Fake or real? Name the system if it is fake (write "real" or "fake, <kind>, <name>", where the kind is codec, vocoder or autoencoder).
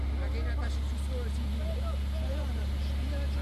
real